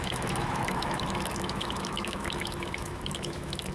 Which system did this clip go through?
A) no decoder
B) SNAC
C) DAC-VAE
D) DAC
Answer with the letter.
C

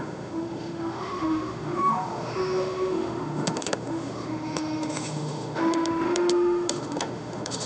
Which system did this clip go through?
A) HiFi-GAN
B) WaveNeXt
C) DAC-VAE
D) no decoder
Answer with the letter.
C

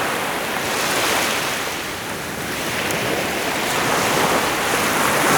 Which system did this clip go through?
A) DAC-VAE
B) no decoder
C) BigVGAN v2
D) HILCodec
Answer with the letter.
B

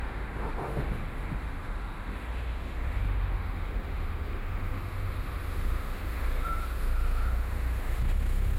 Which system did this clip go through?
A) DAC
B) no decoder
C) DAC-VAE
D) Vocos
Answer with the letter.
C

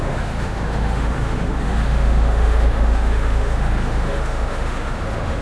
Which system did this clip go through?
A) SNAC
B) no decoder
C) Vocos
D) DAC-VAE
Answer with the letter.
D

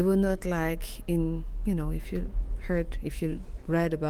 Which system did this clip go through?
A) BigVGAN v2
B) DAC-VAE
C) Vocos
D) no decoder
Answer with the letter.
B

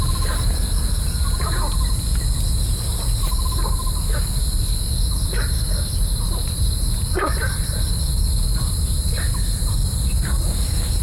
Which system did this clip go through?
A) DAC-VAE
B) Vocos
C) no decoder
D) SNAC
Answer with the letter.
C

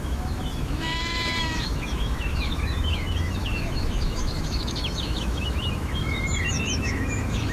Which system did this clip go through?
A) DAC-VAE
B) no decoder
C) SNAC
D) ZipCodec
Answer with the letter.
A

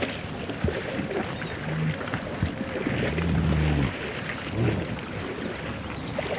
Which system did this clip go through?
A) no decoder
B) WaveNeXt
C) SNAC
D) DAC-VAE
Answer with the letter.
A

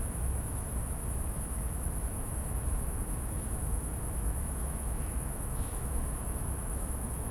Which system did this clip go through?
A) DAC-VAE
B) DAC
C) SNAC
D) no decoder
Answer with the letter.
A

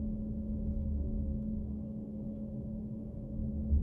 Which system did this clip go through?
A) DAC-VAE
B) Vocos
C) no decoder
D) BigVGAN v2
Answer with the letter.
A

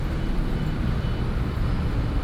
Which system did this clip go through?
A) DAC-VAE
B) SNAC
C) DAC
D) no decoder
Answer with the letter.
D